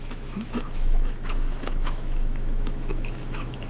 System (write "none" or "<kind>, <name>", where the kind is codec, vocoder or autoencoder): autoencoder, DAC-VAE